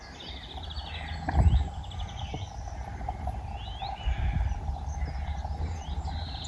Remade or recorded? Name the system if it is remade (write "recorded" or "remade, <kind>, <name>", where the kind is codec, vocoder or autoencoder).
remade, vocoder, BigVGAN v2